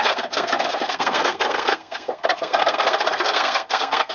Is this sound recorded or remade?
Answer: remade